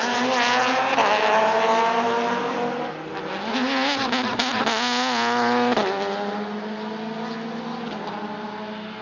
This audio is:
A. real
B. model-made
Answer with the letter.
A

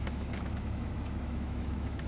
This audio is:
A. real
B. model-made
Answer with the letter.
B